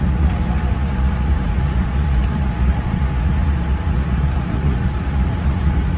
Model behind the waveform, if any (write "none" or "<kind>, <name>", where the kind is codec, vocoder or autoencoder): vocoder, Vocos